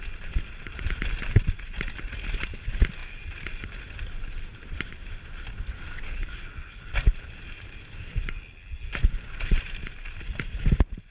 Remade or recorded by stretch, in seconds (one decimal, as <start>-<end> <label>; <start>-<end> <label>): 0.0-11.1 recorded